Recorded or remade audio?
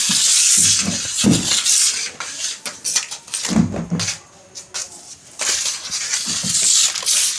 recorded